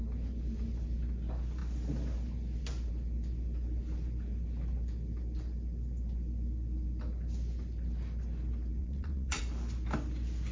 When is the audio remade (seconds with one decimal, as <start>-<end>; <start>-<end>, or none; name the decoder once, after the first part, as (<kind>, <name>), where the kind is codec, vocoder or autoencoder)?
8.8-9.4 (vocoder, Vocos)